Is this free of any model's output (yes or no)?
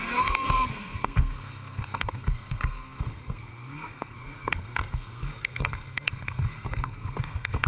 no